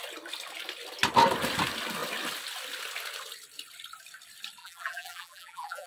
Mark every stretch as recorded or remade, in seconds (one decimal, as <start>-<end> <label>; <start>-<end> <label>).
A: 0.0-4.6 recorded; 4.6-5.9 remade